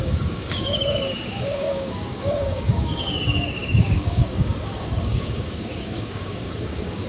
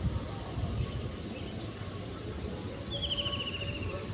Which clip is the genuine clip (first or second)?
second